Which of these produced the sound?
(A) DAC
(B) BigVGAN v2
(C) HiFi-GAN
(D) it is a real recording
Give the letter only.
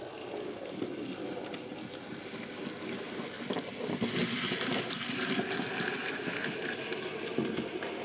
D